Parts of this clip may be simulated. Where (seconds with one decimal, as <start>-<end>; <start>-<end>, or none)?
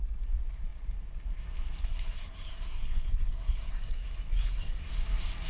1.8-4.9